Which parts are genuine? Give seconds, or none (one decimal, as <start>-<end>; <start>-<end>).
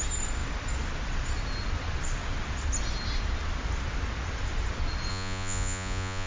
0.0-5.1